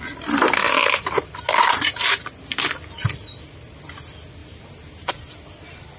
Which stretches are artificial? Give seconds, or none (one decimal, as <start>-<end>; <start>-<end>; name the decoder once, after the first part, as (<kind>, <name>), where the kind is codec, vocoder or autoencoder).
4.4-5.1 (vocoder, BigVGAN v2)